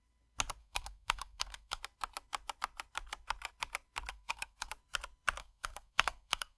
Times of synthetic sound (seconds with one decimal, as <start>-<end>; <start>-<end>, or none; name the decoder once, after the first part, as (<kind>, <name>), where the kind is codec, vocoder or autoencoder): 0.6-1.8 (codec, SNAC); 4.1-4.7; 5.4-6.6